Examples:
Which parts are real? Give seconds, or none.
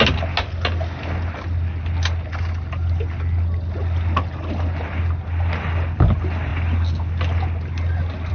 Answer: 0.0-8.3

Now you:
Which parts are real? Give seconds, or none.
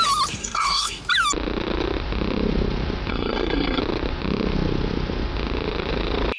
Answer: 0.0-0.4; 1.0-3.1; 3.8-6.4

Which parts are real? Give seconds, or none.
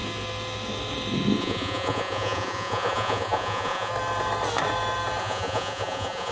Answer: 0.0-1.4; 3.9-5.2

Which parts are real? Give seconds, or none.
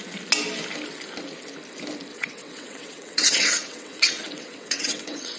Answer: 0.0-2.1